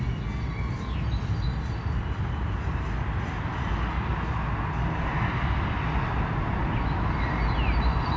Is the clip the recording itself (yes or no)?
yes